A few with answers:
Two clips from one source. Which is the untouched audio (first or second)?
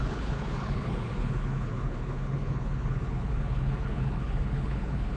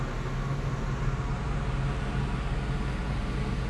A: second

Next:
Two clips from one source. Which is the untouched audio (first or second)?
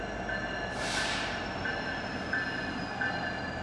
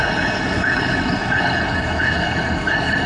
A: first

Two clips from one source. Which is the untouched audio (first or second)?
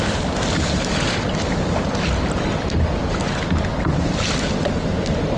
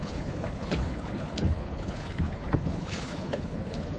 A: first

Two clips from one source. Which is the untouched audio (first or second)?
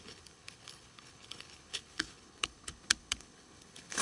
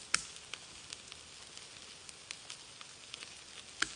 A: second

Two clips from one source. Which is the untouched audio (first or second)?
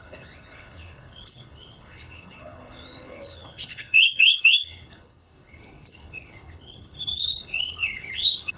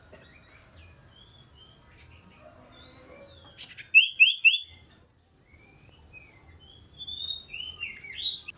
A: second